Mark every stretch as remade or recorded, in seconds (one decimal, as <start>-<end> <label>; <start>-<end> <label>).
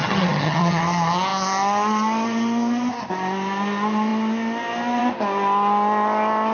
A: 0.0-0.8 remade; 0.8-6.5 recorded